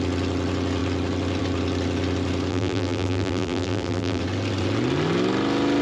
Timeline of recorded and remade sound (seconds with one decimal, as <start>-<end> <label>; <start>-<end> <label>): 0.0-2.5 recorded; 2.5-4.2 remade; 4.2-5.8 recorded